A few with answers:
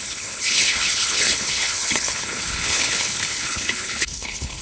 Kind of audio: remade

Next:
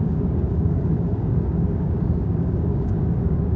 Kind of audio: remade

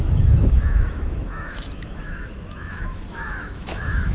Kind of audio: remade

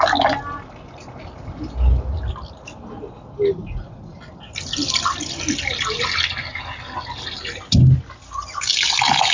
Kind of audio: recorded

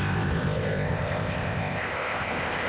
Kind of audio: remade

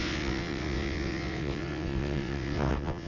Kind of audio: remade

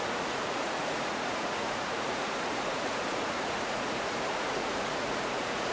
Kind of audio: remade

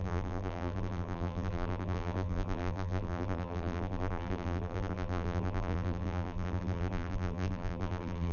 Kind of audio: remade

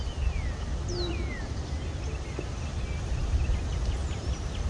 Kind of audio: recorded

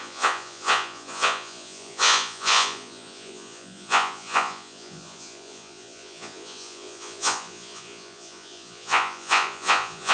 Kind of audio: remade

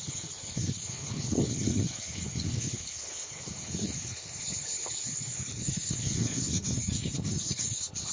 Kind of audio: remade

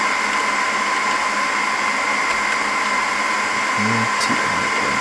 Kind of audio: recorded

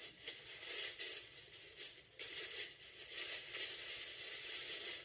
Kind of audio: remade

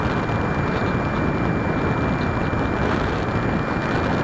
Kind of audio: recorded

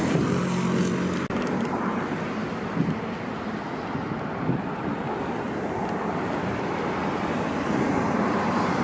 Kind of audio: recorded